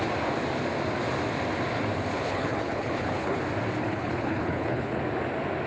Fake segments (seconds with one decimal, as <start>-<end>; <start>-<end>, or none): 2.1-3.4; 3.8-5.0